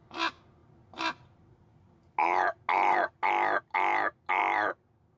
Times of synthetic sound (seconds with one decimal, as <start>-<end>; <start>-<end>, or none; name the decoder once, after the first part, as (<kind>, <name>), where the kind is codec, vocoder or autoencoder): none